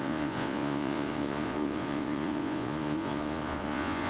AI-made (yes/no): yes